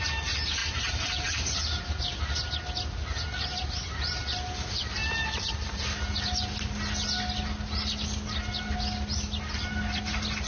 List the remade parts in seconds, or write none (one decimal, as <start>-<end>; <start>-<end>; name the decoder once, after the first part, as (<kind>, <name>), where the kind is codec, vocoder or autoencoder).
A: 0.6-1.8 (vocoder, BigVGAN v2); 5.0-6.0